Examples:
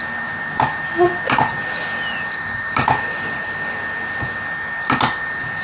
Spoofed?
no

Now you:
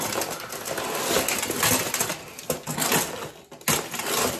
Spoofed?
no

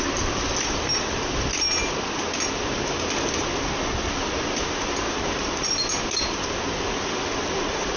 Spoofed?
no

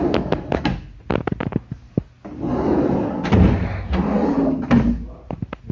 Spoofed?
no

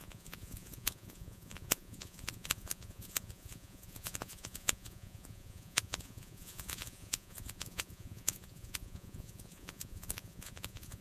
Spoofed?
yes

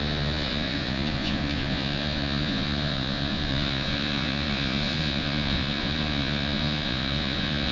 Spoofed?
yes